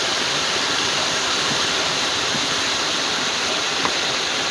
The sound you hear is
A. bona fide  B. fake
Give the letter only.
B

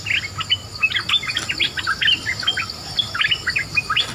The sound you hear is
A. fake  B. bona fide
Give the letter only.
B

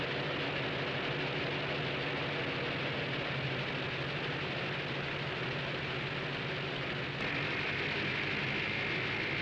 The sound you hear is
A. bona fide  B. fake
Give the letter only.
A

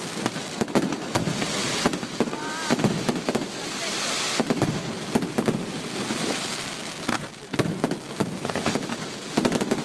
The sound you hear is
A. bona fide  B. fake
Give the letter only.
A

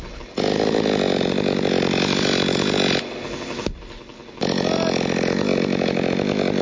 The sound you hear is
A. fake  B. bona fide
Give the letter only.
B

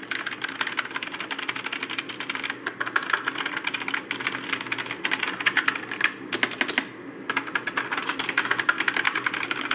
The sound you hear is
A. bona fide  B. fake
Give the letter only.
A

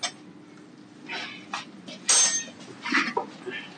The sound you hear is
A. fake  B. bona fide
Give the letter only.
B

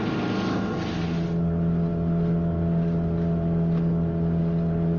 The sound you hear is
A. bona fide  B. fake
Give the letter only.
A